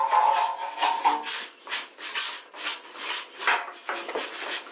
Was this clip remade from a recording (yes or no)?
no